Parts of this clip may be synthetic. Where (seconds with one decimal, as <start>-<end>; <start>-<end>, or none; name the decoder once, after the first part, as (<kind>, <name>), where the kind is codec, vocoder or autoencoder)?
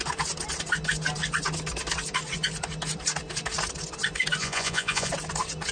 4.4-5.1 (vocoder, Vocos)